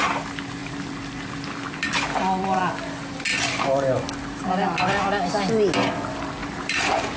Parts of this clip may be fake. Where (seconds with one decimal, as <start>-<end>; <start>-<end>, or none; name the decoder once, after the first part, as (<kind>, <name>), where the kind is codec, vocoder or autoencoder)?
0.6-2.6 (vocoder, BigVGAN v2); 3.3-5.3; 6.4-7.2